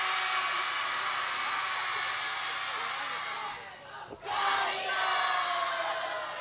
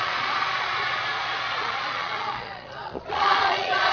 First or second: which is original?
first